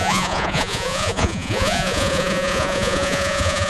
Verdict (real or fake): fake